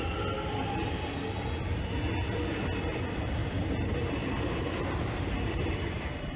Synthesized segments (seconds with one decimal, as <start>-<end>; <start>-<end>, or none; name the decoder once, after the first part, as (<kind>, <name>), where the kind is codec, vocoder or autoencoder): 3.4-6.4 (vocoder, BigVGAN v2)